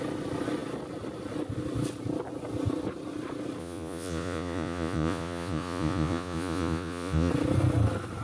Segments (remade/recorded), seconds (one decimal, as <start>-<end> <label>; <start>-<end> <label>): 0.0-3.6 recorded; 3.6-7.3 remade; 7.3-8.2 recorded